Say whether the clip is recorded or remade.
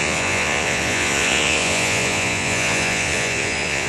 remade